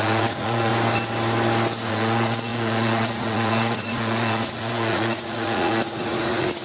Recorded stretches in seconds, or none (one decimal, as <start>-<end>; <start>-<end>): 0.7-1.9